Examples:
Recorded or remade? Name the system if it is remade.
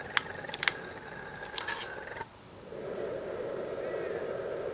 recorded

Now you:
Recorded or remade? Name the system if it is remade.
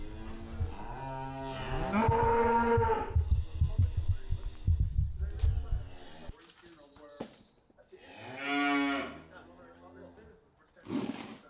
recorded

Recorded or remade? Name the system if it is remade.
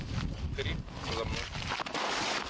recorded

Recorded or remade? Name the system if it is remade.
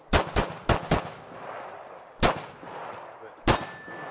recorded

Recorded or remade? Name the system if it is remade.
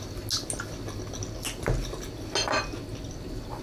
recorded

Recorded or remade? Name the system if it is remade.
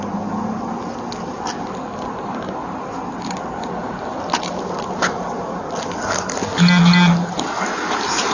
recorded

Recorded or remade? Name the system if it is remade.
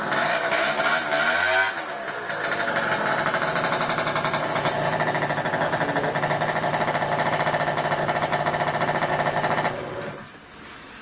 recorded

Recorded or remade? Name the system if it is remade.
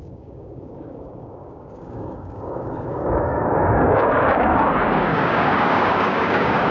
remade, codec, DAC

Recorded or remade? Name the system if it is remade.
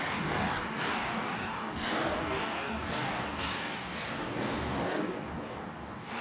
remade, codec, DAC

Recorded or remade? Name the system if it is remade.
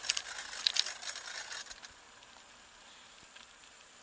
recorded